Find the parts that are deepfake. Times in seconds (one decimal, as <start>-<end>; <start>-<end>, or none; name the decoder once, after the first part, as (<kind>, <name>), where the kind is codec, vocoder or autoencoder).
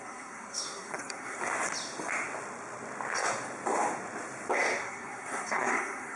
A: 0.0-1.4 (codec, SNAC); 4.8-6.2